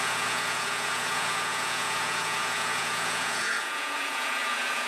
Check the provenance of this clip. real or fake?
fake